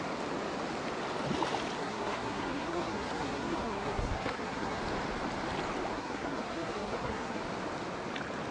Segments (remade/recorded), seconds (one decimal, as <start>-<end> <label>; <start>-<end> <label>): 0.0-1.8 recorded; 1.8-4.8 remade; 4.8-5.9 recorded; 5.9-7.4 remade; 7.4-8.5 recorded